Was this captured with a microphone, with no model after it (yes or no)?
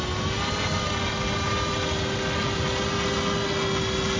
yes